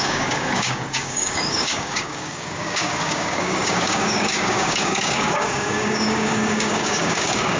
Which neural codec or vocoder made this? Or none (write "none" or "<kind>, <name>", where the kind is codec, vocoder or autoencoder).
codec, DAC